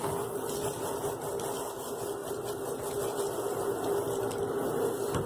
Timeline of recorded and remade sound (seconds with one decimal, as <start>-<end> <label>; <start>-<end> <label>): 0.0-5.3 recorded